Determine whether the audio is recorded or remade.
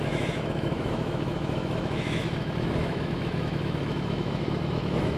remade